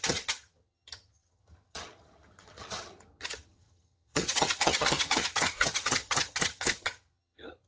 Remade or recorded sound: remade